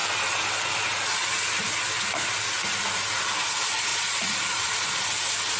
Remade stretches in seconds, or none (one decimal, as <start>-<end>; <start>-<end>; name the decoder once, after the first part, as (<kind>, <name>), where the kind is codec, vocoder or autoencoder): 3.9-5.0 (vocoder, Vocos)